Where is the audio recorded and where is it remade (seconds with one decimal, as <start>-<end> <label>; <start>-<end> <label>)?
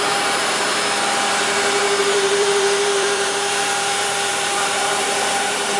0.0-0.7 remade; 0.7-2.0 recorded; 2.0-5.8 remade